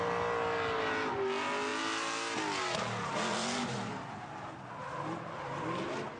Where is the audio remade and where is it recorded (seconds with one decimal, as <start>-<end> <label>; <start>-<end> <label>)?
0.0-6.2 recorded